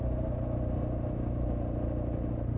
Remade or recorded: recorded